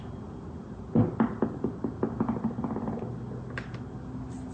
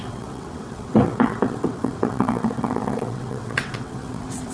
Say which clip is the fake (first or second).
second